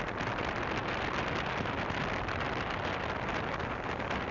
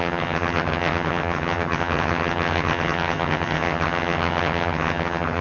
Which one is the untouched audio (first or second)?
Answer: first